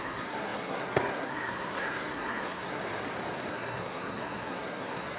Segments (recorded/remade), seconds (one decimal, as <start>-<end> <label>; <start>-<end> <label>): 0.0-2.8 remade; 2.8-3.5 recorded; 3.5-5.2 remade